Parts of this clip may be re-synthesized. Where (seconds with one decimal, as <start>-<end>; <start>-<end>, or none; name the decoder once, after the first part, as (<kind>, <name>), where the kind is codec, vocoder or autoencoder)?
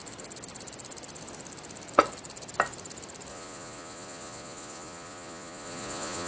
3.3-6.3 (vocoder, Vocos)